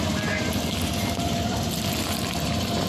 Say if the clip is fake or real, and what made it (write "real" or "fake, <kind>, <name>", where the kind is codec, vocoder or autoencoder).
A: real